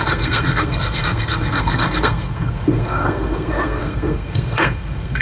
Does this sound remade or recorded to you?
remade